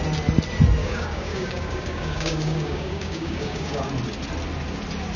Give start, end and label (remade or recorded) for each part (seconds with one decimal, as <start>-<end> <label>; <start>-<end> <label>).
0.0-0.8 recorded; 0.8-3.9 remade; 3.9-5.2 recorded